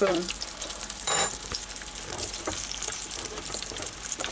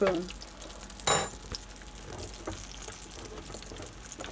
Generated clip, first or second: first